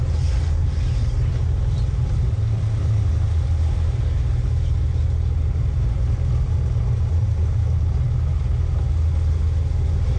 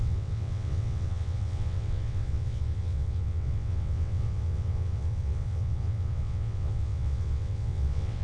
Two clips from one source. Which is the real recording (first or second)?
first